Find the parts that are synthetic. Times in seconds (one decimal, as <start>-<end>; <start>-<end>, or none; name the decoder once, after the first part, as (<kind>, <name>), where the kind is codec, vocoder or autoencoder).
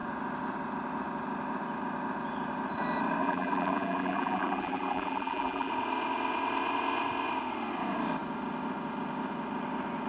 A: 3.2-5.7 (vocoder, BigVGAN v2)